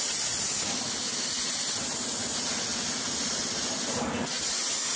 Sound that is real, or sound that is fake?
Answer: real